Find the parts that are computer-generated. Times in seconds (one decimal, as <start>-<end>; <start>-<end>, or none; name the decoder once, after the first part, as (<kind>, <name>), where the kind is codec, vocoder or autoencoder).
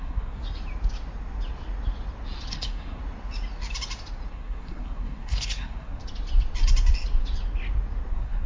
0.0-0.4 (codec, SNAC); 2.5-3.0; 4.3-6.0; 8.1-8.5